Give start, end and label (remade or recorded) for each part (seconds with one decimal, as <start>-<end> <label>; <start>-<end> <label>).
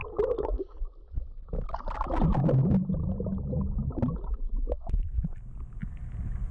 0.0-6.5 recorded